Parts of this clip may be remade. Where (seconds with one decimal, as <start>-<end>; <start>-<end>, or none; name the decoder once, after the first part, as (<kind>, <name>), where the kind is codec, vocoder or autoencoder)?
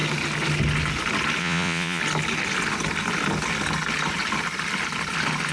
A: 1.4-2.0 (vocoder, Vocos)